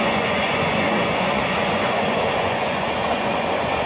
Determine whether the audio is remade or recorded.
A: remade